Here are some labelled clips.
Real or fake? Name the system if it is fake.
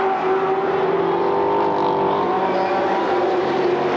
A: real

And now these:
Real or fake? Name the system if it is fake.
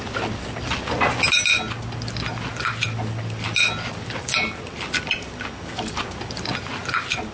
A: real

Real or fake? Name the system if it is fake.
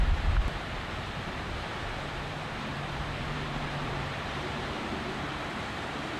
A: fake, vocoder, BigVGAN v2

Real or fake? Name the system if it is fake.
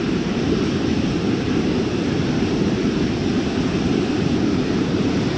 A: fake, vocoder, BigVGAN v2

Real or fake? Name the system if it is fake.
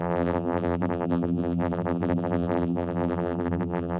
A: fake, vocoder, BigVGAN v2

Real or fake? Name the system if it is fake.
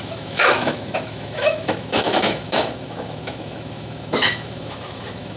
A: fake, autoencoder, DAC-VAE